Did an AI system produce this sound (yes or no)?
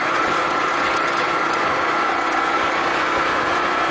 yes